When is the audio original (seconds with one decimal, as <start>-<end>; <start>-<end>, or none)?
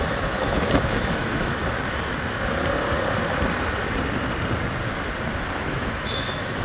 1.6-5.6